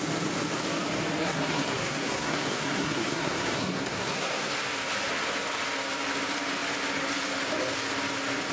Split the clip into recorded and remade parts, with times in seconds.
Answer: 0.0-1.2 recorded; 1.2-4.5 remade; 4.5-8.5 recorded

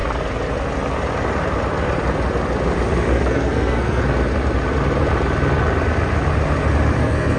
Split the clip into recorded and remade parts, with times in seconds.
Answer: 0.0-3.1 recorded; 3.1-4.0 remade; 4.0-7.0 recorded; 7.0-7.4 remade

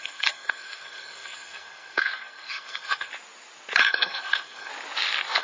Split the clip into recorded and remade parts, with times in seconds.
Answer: 0.0-3.1 remade; 3.1-3.8 recorded; 3.8-4.7 remade; 4.7-5.4 recorded

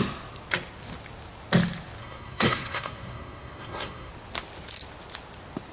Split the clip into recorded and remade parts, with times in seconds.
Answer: 0.0-2.0 recorded; 2.0-4.1 remade; 4.1-5.7 recorded

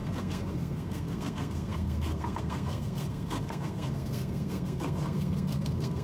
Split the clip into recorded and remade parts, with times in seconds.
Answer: 0.0-6.0 remade

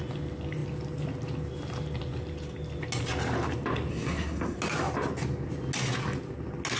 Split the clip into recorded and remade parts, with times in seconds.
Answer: 0.0-3.9 recorded; 3.9-4.6 remade; 4.6-6.8 recorded

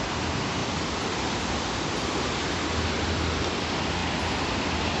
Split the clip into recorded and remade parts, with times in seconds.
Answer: 0.0-5.0 recorded

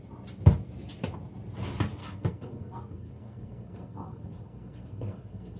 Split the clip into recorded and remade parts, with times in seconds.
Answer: 0.0-2.0 recorded; 2.0-5.6 remade